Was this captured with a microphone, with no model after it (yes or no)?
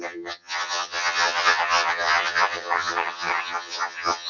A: no